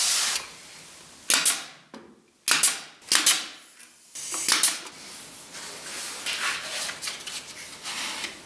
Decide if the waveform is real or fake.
real